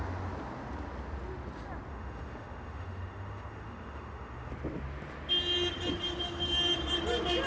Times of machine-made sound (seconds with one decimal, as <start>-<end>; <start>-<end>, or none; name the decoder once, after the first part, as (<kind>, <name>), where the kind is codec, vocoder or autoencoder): 1.9-4.5 (autoencoder, DAC-VAE)